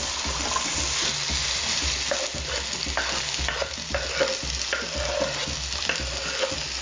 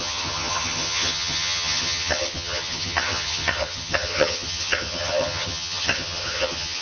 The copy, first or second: second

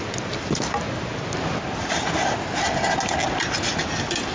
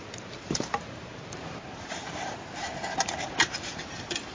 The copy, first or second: second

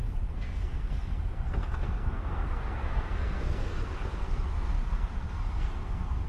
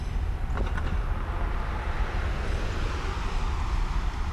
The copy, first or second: first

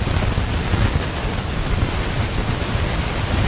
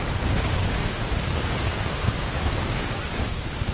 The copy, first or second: second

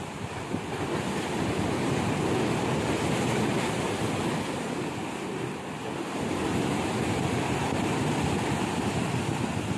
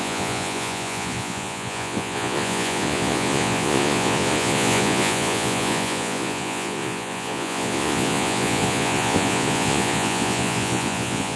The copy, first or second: second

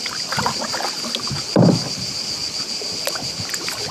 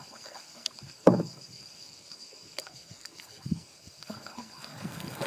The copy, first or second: second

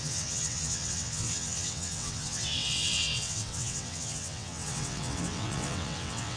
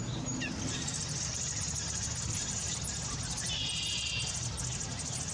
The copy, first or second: first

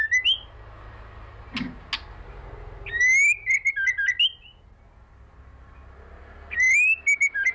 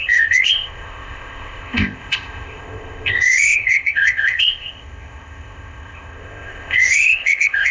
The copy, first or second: second